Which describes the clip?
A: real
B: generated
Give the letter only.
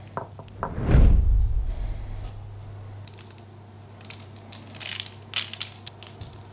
A